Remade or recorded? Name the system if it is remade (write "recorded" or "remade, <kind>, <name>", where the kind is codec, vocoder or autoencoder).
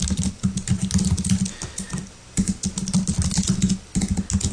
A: recorded